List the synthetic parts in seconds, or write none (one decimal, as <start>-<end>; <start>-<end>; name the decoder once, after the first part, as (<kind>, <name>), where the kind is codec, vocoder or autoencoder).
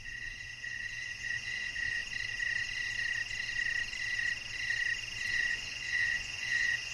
0.0-2.0 (vocoder, Vocos); 5.5-6.9